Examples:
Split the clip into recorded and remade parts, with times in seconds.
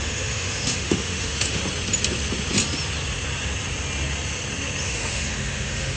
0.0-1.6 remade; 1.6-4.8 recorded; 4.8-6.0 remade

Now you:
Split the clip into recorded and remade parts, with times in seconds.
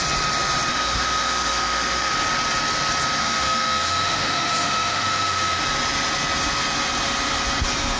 0.0-0.7 recorded; 0.7-2.1 remade; 2.1-3.2 recorded; 3.2-5.6 remade; 5.6-8.0 recorded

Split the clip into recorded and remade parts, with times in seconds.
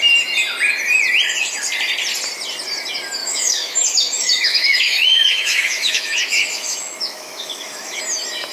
0.0-3.2 recorded; 3.2-8.0 remade; 8.0-8.5 recorded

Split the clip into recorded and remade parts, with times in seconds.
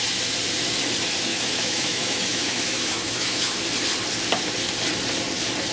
0.0-1.3 recorded; 1.3-3.6 remade; 3.6-5.7 recorded